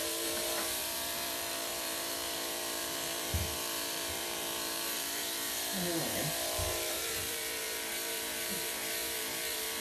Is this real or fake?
fake